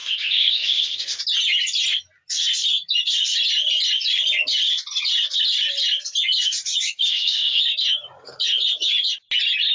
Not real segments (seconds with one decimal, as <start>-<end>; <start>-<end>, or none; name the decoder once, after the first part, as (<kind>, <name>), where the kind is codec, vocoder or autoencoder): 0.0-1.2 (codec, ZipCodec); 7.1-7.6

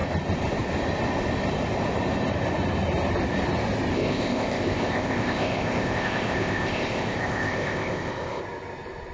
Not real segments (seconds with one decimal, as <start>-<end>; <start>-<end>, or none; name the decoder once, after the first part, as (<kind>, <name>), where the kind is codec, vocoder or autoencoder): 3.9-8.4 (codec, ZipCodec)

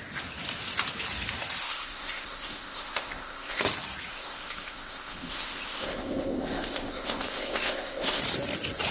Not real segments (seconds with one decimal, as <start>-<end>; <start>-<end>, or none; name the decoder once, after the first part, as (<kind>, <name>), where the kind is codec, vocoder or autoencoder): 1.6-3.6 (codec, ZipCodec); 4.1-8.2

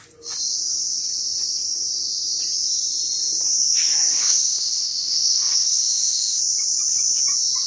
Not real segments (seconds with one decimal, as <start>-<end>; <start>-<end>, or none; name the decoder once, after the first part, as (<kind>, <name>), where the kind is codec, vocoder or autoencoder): 4.1-6.4 (codec, ZipCodec)

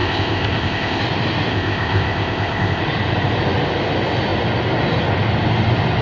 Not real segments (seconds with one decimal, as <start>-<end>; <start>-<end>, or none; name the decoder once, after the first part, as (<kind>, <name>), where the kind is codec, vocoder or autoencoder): 0.0-1.0 (codec, ZipCodec); 1.5-2.8

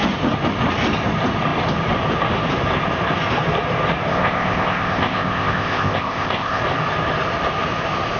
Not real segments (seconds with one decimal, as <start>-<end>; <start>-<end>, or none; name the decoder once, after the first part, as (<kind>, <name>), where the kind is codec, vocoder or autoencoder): 4.1-6.6 (codec, ZipCodec)